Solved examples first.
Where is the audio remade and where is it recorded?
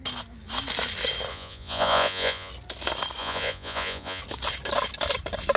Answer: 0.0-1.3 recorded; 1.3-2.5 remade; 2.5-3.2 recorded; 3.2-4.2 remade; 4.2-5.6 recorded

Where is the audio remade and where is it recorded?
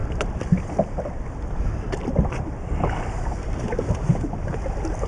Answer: 0.0-5.1 recorded